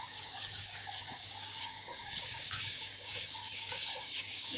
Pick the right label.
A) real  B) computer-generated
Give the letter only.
B